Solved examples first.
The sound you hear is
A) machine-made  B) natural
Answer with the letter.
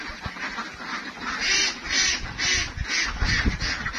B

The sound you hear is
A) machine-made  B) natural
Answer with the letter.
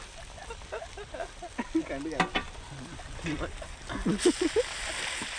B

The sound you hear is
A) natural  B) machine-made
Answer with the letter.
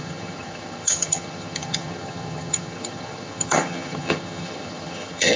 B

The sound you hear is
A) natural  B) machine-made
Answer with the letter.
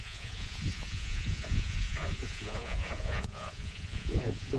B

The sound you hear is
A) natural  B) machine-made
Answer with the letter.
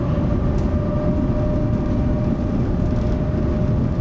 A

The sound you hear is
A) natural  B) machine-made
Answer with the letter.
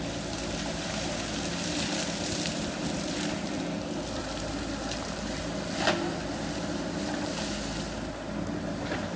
A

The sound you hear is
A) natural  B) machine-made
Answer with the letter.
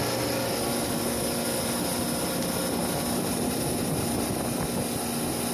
A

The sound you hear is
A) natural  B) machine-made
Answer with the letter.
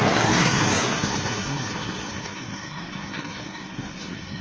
B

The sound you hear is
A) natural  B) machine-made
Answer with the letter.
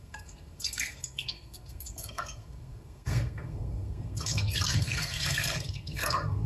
B